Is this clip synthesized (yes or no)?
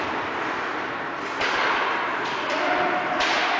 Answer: no